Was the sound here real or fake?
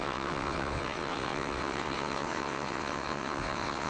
fake